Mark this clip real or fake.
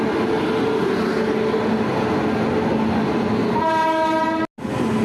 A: real